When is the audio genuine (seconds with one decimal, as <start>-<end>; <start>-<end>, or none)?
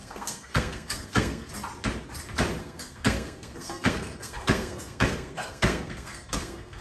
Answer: 1.5-2.6